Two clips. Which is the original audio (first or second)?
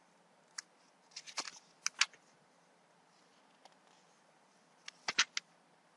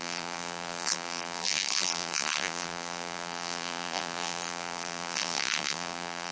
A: first